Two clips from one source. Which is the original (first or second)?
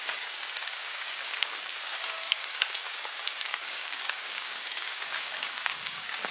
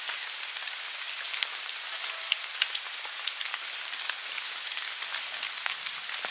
second